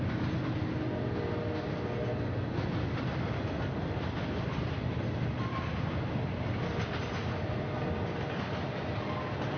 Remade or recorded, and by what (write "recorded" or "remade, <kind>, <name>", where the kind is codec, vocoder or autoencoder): recorded